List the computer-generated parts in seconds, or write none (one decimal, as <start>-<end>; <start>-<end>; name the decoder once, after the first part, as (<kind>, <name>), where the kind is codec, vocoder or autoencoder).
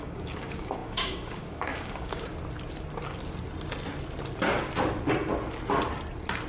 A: 0.0-2.3 (codec, DAC)